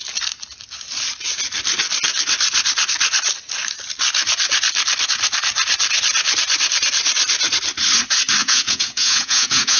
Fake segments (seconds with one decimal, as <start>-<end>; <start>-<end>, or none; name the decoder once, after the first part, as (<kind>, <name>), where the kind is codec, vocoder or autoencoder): 8.4-9.8 (vocoder, Vocos)